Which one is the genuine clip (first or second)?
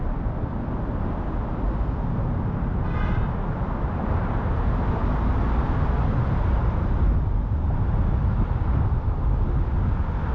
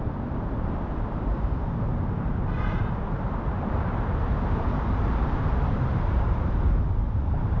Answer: first